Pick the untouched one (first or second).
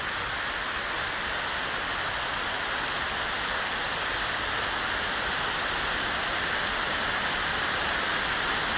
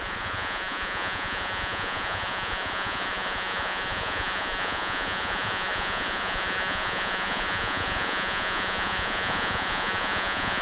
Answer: first